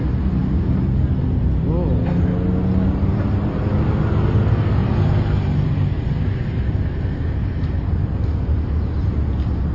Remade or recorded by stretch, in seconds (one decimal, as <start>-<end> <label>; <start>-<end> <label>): 0.0-4.8 recorded; 4.8-6.6 remade; 6.6-9.7 recorded